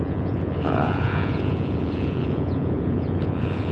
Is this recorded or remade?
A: remade